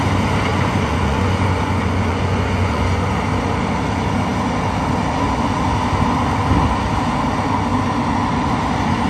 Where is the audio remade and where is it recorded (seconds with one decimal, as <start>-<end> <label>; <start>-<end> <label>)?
0.0-0.5 recorded; 0.5-3.1 remade; 3.1-9.1 recorded